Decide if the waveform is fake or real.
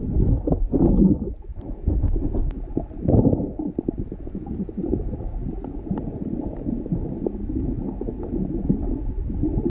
real